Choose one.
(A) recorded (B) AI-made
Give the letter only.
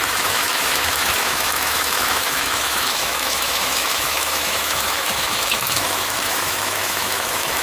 B